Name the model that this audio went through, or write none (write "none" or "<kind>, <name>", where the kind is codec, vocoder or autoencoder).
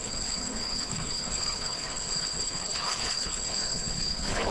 codec, HILCodec